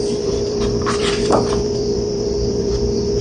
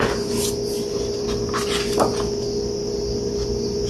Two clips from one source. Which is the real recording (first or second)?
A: second